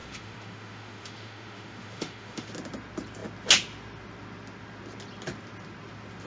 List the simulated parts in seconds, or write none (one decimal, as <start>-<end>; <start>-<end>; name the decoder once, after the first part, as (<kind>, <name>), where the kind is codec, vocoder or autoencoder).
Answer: 0.0-2.5 (autoencoder, DAC-VAE)